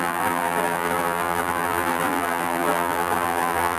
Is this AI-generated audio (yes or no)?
yes